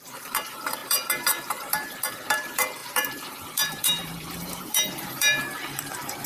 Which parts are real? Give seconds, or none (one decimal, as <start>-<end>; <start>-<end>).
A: none